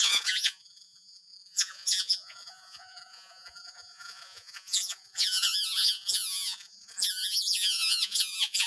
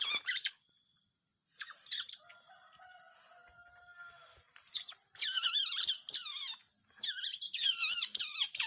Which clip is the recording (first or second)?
second